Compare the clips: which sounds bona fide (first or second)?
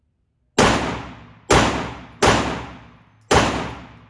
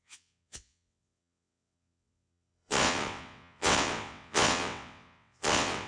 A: first